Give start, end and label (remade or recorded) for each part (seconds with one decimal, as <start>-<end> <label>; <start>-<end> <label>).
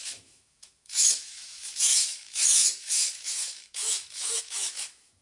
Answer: 0.0-5.2 remade